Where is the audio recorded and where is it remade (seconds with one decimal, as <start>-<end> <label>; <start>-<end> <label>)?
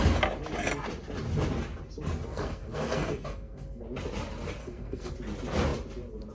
0.0-2.3 recorded; 2.3-3.8 remade; 3.8-4.6 recorded; 4.6-5.1 remade; 5.1-6.3 recorded